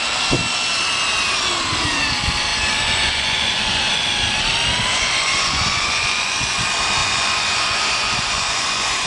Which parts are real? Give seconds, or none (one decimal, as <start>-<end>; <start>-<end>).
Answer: 0.0-2.5; 3.9-4.9; 6.6-7.0